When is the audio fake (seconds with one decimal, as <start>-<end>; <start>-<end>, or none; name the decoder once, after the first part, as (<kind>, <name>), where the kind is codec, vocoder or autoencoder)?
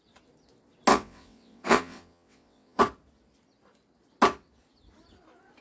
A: 0.9-2.8 (vocoder, WaveNeXt)